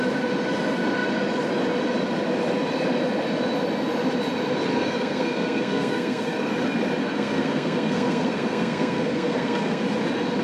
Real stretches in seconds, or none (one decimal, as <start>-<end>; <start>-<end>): 0.0-4.7; 6.5-7.0; 9.8-10.4